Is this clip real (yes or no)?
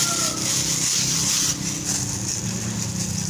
yes